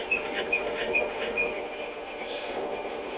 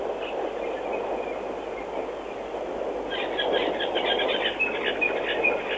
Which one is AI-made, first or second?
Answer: first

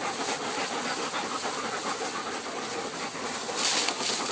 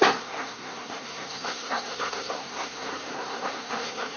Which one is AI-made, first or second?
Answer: second